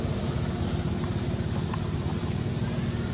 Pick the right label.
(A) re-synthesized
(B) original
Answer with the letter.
B